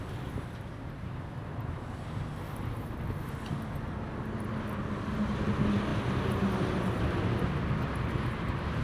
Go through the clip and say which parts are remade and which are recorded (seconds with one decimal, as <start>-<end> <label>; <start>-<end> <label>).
0.0-8.8 recorded